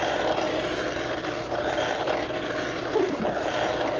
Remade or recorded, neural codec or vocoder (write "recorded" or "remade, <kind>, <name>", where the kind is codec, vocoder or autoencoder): recorded